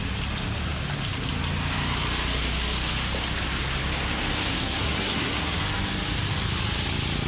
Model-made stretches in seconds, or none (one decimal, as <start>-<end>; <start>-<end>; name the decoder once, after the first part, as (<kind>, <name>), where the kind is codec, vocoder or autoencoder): 4.5-5.6 (codec, SNAC)